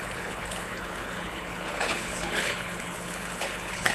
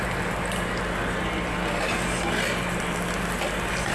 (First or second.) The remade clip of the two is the first